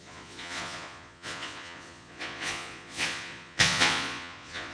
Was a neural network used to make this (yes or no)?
yes